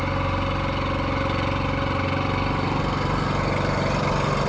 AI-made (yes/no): no